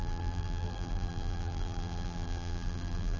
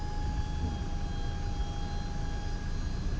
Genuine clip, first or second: second